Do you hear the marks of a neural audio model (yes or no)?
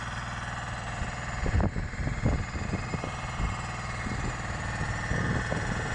no